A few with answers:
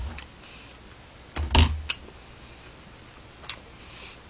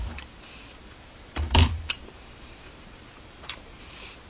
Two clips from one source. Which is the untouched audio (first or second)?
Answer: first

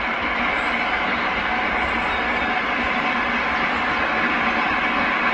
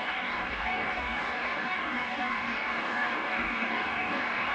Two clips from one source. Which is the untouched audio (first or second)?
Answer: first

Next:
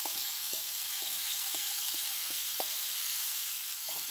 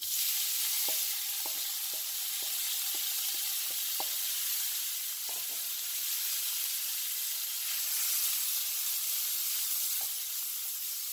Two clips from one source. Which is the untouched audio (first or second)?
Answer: second